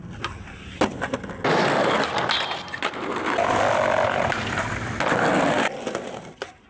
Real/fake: real